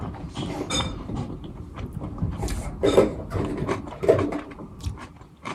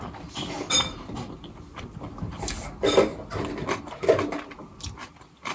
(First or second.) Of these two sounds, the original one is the second